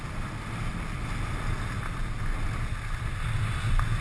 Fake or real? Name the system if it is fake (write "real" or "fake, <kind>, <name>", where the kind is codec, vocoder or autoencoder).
real